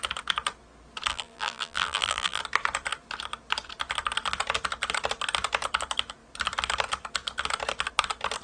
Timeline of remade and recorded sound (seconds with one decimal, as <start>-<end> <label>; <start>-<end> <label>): 0.0-1.1 recorded; 1.1-2.4 remade; 2.4-8.4 recorded